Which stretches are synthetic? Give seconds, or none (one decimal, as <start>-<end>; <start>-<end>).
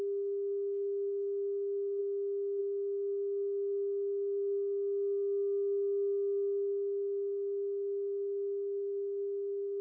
0.0-2.0; 2.6-9.8